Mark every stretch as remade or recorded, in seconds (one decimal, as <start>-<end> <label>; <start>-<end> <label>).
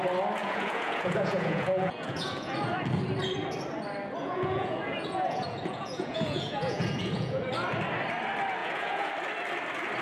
0.0-0.4 recorded; 0.4-2.5 remade; 2.5-4.2 recorded; 4.2-7.5 remade; 7.5-8.6 recorded; 8.6-9.1 remade; 9.1-10.0 recorded